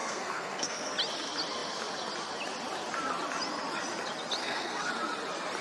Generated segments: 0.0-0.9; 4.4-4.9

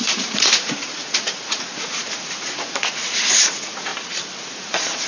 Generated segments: 0.0-3.9; 4.4-5.1

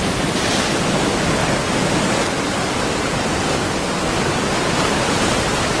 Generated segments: none

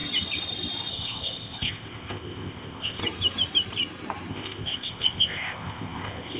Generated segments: 0.9-3.0; 4.3-6.4

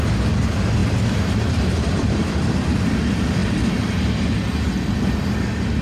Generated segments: 0.8-3.0; 3.4-4.1

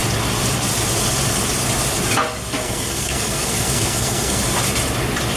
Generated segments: 2.6-4.4

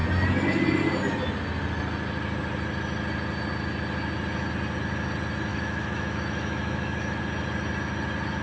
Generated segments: 5.5-7.2